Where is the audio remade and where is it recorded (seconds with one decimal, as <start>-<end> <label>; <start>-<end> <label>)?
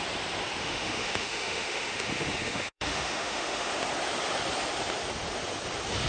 0.0-0.6 recorded; 0.6-3.7 remade; 3.7-6.1 recorded